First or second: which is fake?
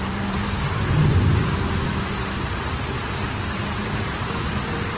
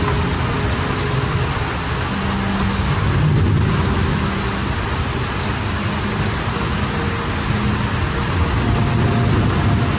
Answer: first